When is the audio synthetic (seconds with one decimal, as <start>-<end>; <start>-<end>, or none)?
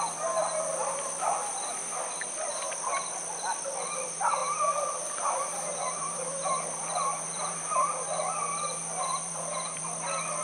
0.4-1.1; 4.4-8.1; 9.1-9.8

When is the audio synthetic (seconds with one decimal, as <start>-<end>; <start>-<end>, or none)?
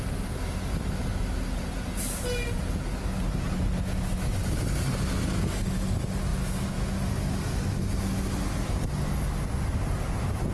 6.3-6.9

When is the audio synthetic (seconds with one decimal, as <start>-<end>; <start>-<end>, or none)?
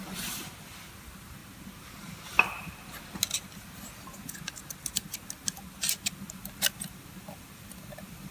0.0-1.4; 6.3-8.3